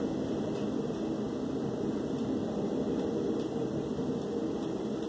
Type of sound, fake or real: real